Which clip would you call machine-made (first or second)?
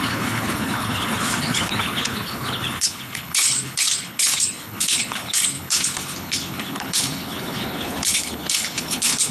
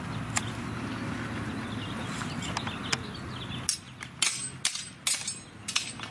first